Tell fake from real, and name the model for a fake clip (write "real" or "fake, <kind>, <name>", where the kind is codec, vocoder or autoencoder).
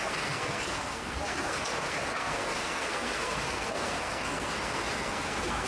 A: fake, codec, SNAC